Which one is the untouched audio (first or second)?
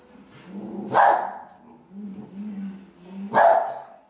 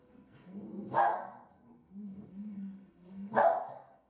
first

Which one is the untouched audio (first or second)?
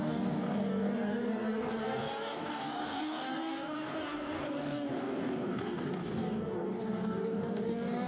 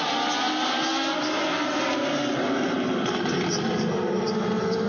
second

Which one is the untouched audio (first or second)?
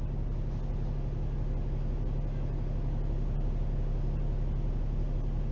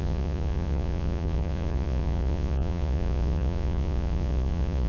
first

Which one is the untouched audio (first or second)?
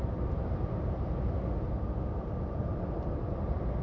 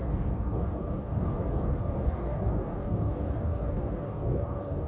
first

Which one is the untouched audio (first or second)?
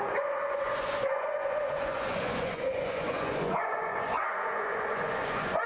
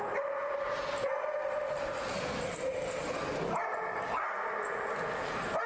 second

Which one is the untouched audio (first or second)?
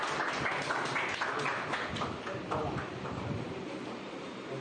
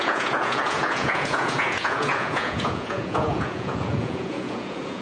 first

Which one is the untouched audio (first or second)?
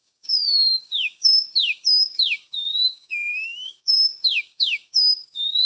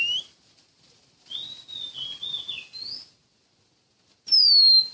second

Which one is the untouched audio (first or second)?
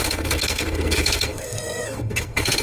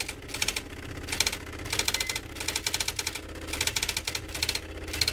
second